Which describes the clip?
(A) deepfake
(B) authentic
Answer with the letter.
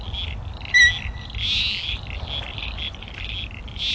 B